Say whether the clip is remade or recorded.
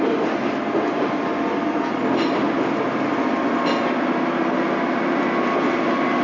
recorded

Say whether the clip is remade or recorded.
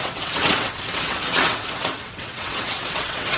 remade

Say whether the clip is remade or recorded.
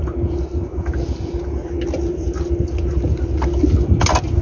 recorded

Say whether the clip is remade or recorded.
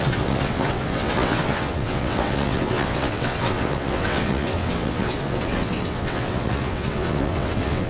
remade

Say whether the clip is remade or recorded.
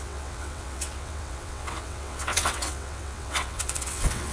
remade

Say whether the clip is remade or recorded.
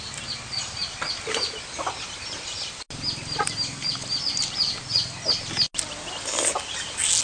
recorded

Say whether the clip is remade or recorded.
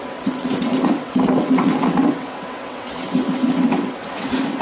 remade